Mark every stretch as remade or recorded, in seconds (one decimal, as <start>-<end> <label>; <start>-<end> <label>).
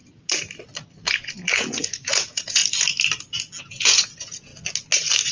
0.0-1.5 recorded; 1.5-2.6 remade; 2.6-3.6 recorded; 3.6-4.5 remade; 4.5-5.3 recorded